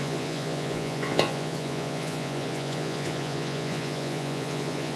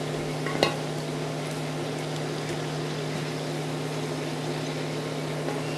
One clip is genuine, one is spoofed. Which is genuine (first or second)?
second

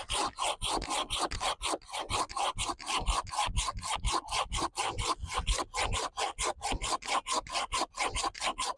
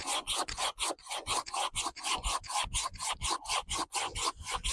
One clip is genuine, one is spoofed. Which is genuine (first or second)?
first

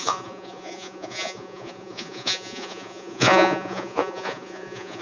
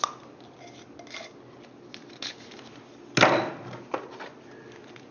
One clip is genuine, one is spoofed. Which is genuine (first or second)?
second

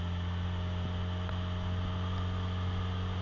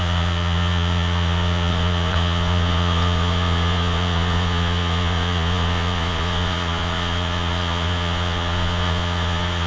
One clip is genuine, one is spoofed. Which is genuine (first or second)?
first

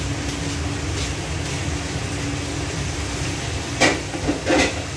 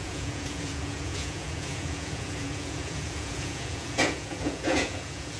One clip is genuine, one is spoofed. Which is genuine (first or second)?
first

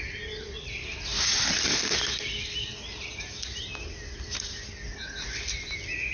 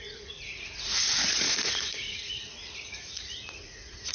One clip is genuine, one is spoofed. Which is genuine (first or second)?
first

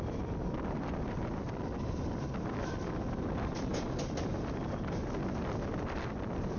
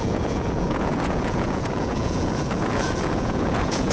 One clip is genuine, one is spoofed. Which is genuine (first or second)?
first